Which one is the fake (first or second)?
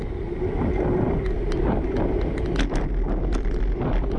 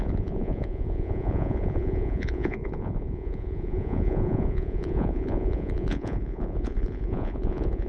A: second